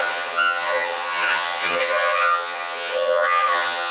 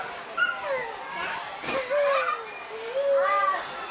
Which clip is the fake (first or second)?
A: first